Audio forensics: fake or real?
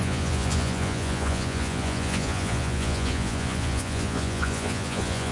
fake